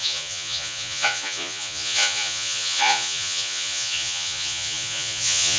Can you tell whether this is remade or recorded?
remade